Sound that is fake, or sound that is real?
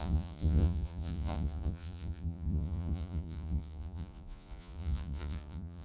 fake